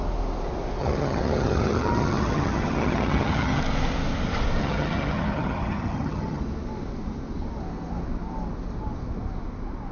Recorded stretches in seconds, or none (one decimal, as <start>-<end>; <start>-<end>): 0.0-0.8; 3.6-4.6; 6.4-9.9